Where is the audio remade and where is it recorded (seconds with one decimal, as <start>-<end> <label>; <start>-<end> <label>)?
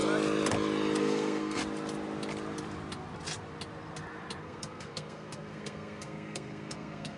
0.0-1.0 recorded; 1.0-1.6 remade; 1.6-4.4 recorded; 4.4-7.2 remade